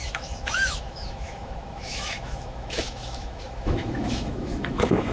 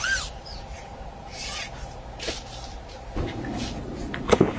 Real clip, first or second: second